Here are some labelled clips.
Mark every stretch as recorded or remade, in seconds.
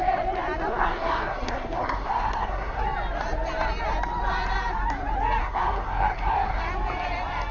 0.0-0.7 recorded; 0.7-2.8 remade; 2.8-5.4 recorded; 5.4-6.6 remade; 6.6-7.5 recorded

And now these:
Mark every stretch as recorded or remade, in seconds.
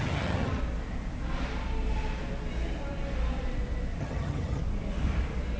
0.0-0.6 remade; 0.6-4.0 recorded; 4.0-4.6 remade; 4.6-5.6 recorded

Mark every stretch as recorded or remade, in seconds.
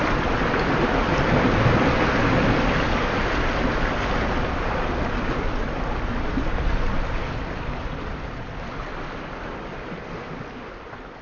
0.0-11.2 recorded